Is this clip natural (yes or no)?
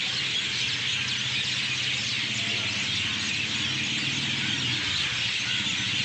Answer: yes